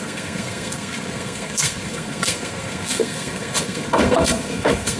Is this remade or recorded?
remade